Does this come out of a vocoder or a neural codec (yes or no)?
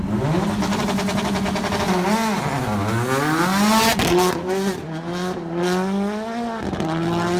no